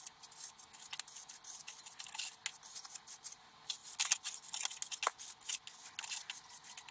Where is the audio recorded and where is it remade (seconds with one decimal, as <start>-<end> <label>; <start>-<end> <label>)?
0.0-6.9 recorded